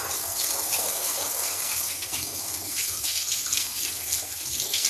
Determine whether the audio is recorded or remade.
remade